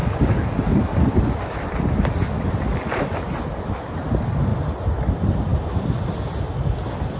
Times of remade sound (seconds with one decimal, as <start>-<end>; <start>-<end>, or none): 0.0-4.5; 5.1-5.5